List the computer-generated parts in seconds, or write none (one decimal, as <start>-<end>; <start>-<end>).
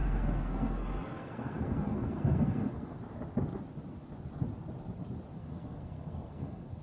0.0-3.0; 5.4-6.8